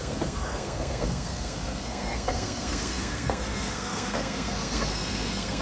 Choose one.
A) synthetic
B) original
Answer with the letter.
A